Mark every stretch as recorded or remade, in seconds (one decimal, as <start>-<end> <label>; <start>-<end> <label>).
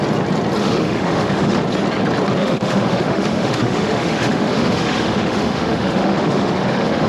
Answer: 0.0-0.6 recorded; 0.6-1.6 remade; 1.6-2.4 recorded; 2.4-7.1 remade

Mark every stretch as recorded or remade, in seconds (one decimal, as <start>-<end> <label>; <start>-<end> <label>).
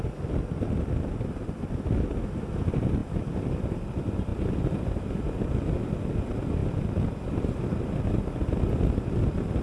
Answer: 0.0-9.6 recorded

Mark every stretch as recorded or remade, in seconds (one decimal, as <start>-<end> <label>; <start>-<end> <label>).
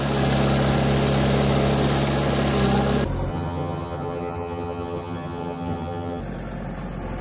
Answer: 0.0-3.3 recorded; 3.3-6.2 remade; 6.2-7.2 recorded